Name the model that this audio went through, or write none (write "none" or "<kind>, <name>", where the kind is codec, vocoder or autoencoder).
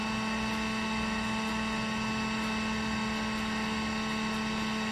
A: none